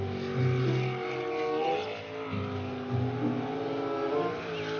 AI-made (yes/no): no